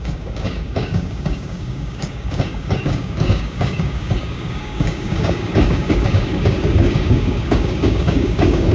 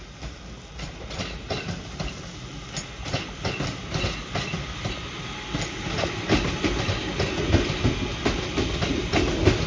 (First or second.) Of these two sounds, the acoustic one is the second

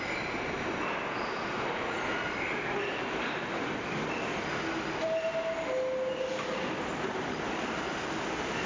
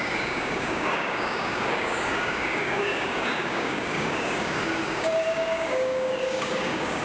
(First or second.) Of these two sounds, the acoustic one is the first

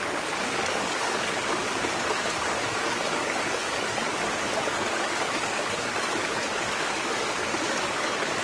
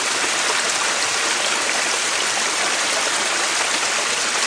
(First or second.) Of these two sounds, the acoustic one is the second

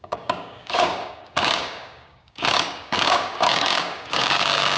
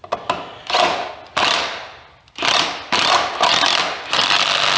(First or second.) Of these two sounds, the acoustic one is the second